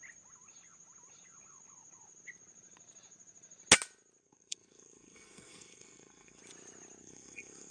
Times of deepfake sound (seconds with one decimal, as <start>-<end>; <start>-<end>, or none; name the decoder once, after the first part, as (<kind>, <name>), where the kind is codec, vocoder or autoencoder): 4.2-6.4 (codec, SNAC); 7.0-7.7